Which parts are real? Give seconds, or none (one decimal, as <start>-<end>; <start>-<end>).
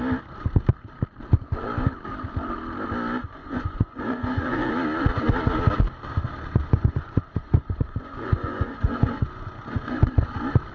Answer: 0.0-3.4; 4.7-6.6; 10.1-10.7